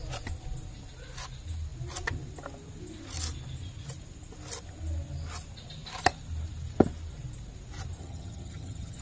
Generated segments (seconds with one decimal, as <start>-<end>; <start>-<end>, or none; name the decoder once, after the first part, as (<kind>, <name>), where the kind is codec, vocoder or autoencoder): 8.0-9.0 (vocoder, HiFi-GAN)